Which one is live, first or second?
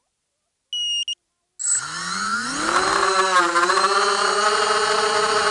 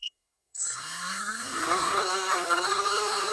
first